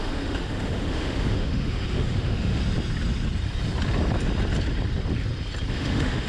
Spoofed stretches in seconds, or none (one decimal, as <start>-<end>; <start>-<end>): 0.0-2.6; 5.7-6.3